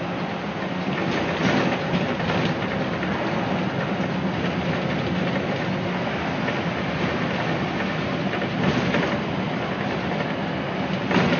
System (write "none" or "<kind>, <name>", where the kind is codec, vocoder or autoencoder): none